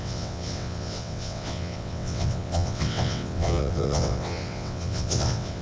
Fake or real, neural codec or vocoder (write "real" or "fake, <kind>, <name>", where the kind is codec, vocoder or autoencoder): fake, vocoder, WaveNeXt